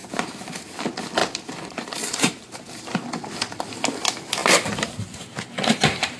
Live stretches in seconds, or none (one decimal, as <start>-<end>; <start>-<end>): 0.5-1.2; 3.1-4.4